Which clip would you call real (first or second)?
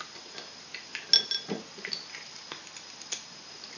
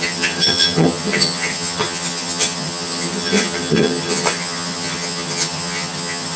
first